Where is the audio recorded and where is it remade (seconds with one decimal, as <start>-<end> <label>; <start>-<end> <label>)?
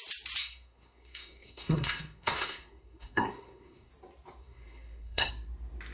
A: 0.0-0.4 recorded; 0.4-3.9 remade; 3.9-4.4 recorded; 4.4-5.3 remade; 5.3-5.9 recorded